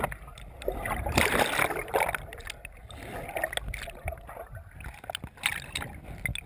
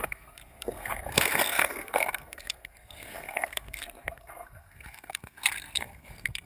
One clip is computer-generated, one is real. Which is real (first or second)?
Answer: first